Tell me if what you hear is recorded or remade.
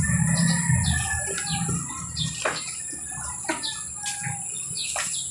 recorded